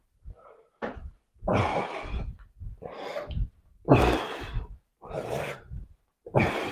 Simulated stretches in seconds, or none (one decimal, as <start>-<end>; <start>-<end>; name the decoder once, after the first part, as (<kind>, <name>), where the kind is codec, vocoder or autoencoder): 0.0-1.7 (vocoder, BigVGAN v2); 4.2-6.7